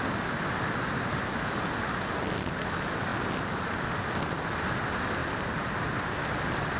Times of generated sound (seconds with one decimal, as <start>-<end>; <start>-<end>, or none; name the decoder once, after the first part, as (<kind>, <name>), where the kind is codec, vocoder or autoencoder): none